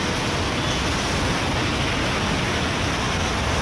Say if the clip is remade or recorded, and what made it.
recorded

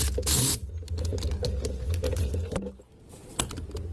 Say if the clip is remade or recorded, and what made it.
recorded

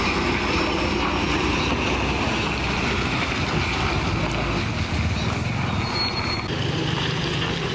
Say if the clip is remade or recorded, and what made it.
recorded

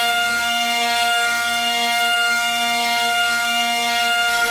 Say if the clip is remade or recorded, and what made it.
remade, codec, SNAC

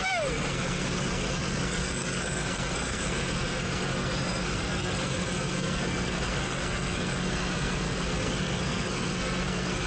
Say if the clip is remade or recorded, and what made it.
remade, codec, SNAC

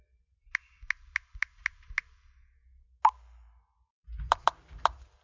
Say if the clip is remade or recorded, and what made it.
recorded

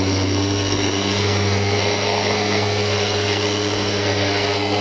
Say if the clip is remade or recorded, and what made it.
remade, codec, SNAC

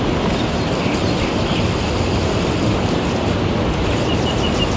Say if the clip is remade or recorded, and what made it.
recorded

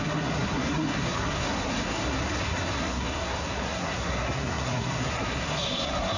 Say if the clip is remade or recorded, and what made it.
remade, codec, SNAC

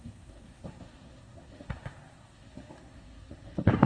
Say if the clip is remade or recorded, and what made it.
remade, codec, SNAC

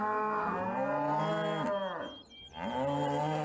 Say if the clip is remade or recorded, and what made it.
recorded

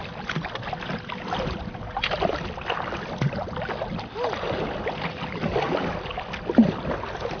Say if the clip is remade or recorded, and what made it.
recorded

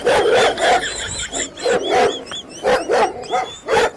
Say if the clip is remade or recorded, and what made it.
recorded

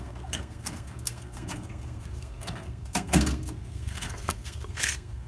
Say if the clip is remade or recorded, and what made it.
remade, codec, SNAC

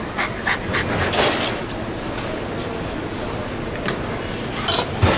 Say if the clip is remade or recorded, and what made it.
recorded